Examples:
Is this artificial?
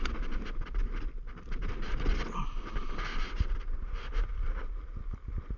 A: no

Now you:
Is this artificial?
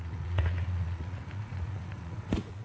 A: yes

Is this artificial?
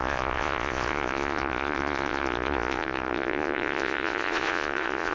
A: yes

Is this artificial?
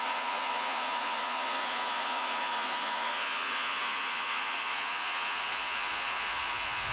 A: yes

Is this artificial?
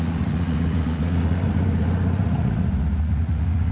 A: yes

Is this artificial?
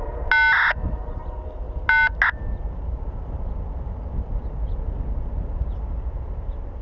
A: no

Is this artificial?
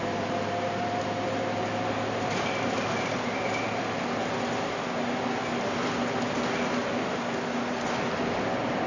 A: no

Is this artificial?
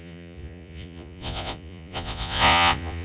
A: yes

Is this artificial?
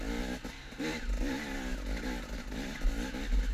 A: no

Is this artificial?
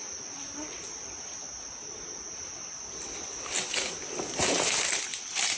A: no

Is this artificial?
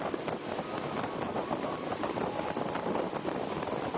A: no